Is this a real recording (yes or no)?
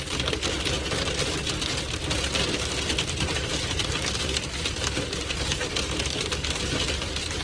yes